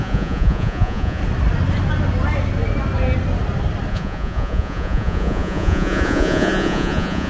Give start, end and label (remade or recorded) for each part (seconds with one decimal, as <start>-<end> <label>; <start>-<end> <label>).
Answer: 0.0-1.2 remade; 1.2-3.9 recorded; 3.9-7.3 remade